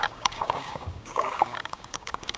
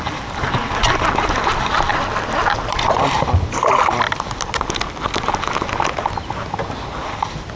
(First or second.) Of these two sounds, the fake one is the first